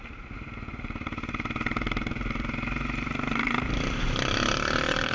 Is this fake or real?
fake